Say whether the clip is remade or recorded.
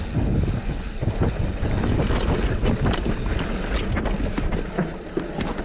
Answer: recorded